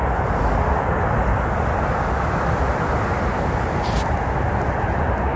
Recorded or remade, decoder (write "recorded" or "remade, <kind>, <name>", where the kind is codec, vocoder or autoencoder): recorded